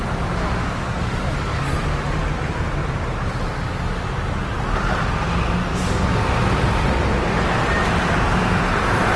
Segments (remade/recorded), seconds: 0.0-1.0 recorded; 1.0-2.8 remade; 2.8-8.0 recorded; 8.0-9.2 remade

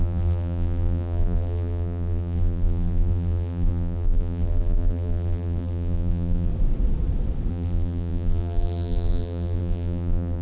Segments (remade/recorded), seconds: 0.0-6.5 remade; 6.5-7.5 recorded; 7.5-10.4 remade